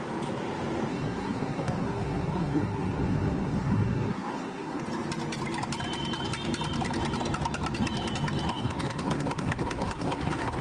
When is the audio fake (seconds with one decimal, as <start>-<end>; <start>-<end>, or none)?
0.9-4.8; 8.5-10.6